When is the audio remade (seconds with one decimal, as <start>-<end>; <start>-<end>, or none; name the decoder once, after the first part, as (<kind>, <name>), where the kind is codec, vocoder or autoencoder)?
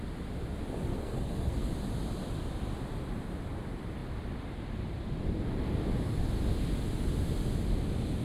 0.9-1.7 (codec, SNAC)